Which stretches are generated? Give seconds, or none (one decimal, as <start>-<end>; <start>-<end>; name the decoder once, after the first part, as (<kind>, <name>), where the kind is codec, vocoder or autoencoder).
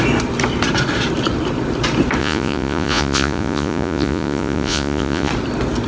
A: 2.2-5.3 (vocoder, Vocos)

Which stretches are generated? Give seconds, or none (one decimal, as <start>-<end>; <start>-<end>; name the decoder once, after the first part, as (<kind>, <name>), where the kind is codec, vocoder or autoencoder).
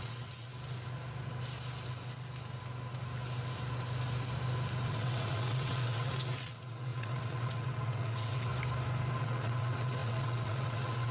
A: 0.0-0.5 (vocoder, WaveNeXt); 4.9-8.5; 9.2-11.1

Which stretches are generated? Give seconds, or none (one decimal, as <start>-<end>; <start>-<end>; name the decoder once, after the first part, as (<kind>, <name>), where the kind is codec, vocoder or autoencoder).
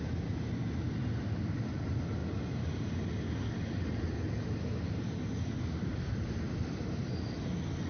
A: none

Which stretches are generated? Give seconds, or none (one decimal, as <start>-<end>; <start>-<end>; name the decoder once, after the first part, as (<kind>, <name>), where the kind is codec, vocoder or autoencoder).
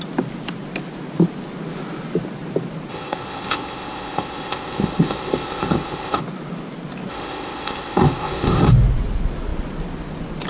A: 2.9-6.2 (codec, ZipCodec); 7.1-8.7